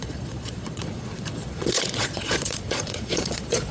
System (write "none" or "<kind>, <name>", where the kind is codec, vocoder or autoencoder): vocoder, Vocos